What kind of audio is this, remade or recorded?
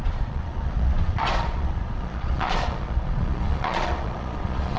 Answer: remade